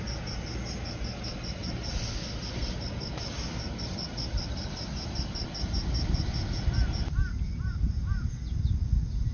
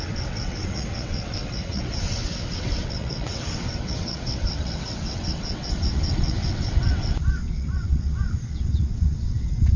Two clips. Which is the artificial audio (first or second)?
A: second